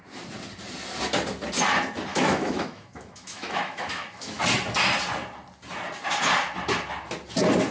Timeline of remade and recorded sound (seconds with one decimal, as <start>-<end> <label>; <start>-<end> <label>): 0.0-2.1 recorded; 2.1-4.4 remade; 4.4-7.7 recorded